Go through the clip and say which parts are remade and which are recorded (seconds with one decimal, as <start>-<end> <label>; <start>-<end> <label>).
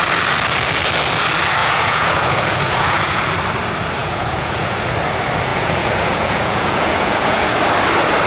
0.0-1.6 recorded; 1.6-3.3 remade; 3.3-4.0 recorded; 4.0-4.8 remade; 4.8-5.5 recorded; 5.5-7.6 remade; 7.6-8.3 recorded